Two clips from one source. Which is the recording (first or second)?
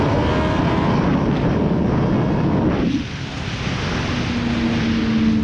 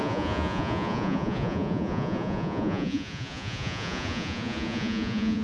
first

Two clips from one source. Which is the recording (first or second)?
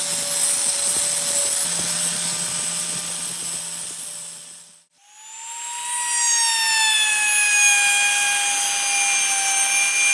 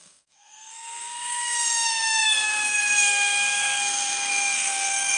first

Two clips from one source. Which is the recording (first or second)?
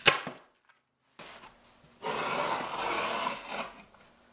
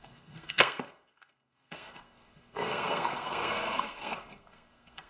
first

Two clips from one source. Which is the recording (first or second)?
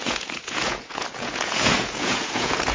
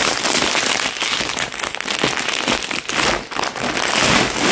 second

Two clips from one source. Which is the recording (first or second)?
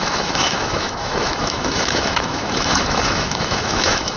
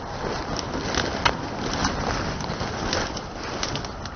second